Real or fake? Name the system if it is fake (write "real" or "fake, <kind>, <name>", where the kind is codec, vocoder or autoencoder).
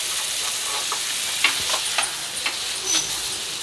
real